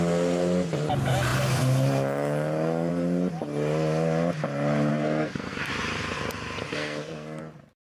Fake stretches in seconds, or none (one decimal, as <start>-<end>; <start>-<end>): 4.9-5.7; 6.7-7.4